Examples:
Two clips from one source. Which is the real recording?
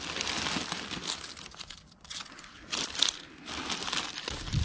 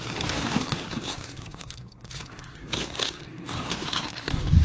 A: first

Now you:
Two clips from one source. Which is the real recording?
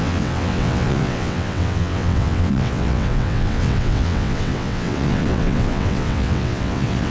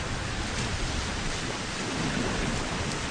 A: second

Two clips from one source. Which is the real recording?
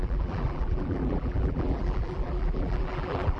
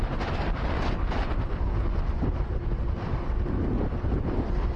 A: second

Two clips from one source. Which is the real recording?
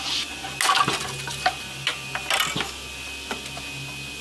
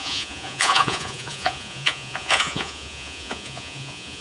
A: first